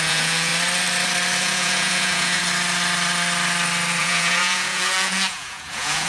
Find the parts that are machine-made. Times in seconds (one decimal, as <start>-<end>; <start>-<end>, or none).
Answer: 0.0-0.5; 1.4-2.4; 4.0-6.1